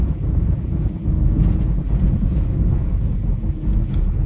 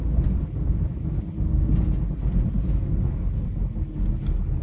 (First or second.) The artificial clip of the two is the first